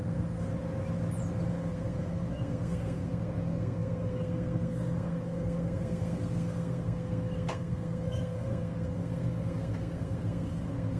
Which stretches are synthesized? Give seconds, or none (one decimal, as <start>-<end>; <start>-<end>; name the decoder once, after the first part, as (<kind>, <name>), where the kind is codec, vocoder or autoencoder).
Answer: 0.0-0.5 (codec, SNAC); 1.5-11.0